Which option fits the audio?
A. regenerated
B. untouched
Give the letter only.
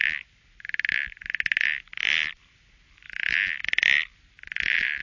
B